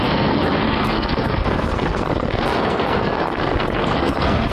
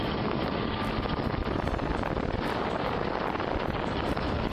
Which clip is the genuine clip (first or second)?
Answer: second